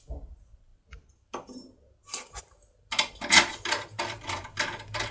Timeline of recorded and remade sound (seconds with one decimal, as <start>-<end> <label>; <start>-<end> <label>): 0.0-5.1 recorded